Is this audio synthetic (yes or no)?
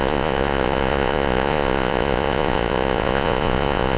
yes